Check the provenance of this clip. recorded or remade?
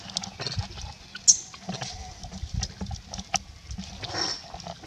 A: recorded